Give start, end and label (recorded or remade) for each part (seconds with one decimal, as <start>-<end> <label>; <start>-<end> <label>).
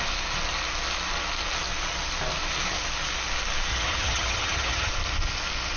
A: 0.0-3.7 recorded; 3.7-4.9 remade; 4.9-5.8 recorded